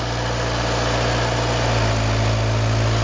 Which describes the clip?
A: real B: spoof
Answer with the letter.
A